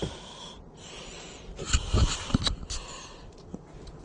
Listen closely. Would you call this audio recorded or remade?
recorded